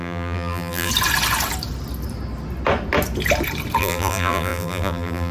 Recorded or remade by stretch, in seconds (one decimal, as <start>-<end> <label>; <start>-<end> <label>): 0.0-0.9 remade; 0.9-3.8 recorded; 3.8-5.3 remade